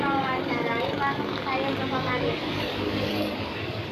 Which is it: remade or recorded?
remade